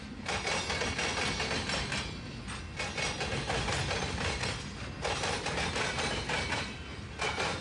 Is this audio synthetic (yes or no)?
no